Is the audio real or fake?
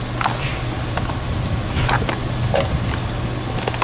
real